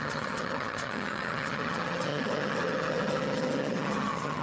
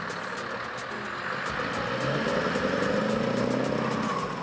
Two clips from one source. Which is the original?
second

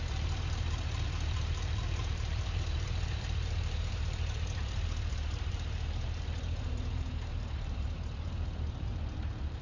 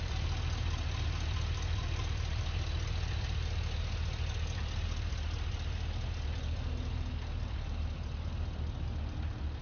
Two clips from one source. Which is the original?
second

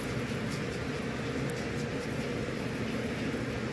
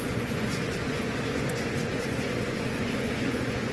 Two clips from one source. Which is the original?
first